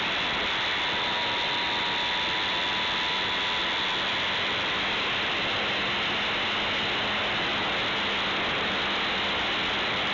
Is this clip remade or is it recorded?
recorded